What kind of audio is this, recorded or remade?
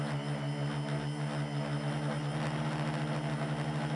recorded